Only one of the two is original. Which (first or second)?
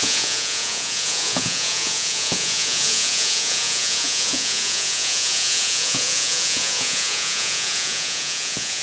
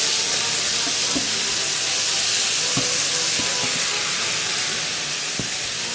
second